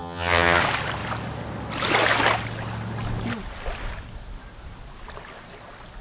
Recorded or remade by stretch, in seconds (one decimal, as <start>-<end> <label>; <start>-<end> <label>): 0.0-0.6 remade; 0.6-6.0 recorded